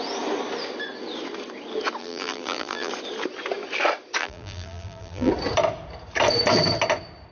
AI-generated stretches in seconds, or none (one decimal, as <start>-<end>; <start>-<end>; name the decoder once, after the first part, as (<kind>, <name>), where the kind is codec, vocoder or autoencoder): 2.0-2.9 (vocoder, BigVGAN v2); 4.2-5.3